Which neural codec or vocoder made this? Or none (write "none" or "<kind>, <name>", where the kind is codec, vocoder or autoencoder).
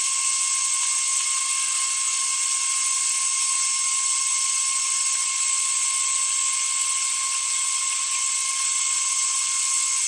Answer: none